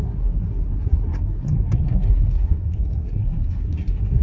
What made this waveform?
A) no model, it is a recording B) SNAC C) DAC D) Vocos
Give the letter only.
B